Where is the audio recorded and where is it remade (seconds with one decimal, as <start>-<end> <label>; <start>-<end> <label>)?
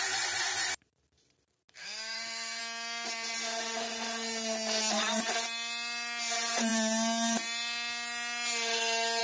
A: 0.0-1.8 recorded; 1.8-2.6 remade; 2.6-9.2 recorded